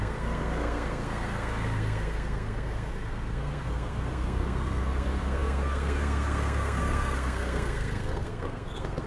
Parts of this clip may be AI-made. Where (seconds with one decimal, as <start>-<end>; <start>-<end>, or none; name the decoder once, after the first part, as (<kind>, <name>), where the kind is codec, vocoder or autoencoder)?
0.0-9.1 (codec, SNAC)